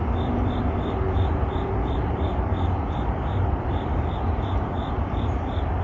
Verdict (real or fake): fake